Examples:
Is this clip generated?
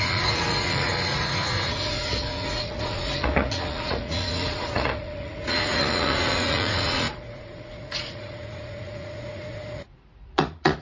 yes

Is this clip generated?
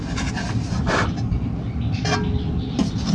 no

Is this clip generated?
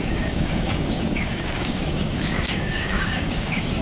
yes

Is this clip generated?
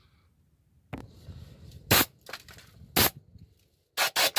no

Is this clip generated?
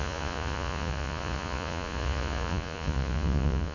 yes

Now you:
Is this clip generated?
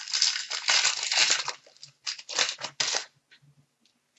no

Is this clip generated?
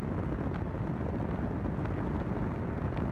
no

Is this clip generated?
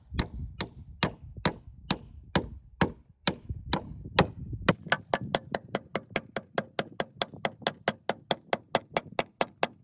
no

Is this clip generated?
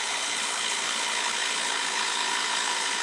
yes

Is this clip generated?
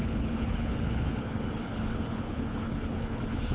yes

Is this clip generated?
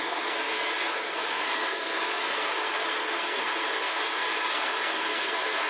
yes